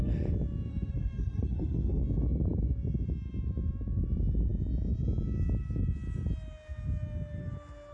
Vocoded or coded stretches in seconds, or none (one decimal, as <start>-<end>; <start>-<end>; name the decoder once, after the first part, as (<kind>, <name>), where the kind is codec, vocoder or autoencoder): 0.7-2.0 (codec, SNAC)

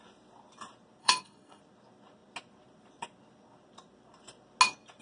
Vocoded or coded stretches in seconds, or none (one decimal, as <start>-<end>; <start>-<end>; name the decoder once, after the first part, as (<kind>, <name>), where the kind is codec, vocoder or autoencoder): 1.0-1.6 (codec, SNAC)

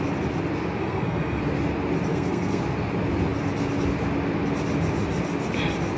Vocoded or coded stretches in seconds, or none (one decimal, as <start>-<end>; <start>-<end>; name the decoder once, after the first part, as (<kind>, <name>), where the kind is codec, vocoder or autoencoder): 0.8-1.4 (codec, SNAC); 2.1-2.6

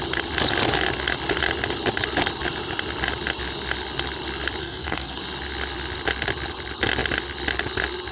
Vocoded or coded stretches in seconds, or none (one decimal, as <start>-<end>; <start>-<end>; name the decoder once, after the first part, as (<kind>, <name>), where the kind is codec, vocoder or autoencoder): 4.6-5.2 (codec, SNAC)

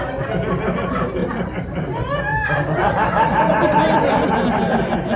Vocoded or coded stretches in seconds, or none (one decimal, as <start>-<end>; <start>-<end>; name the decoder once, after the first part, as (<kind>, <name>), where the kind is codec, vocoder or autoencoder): none

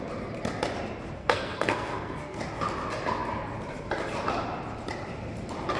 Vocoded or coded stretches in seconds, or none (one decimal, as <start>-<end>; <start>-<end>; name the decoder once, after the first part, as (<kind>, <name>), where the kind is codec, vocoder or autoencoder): 1.2-2.4 (codec, SNAC)